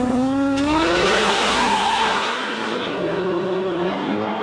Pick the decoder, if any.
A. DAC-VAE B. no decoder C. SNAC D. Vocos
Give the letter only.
C